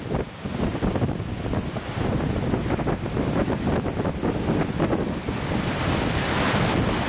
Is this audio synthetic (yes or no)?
no